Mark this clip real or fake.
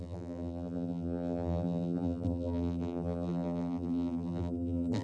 fake